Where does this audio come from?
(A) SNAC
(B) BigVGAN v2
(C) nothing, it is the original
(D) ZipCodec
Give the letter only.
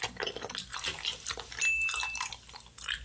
C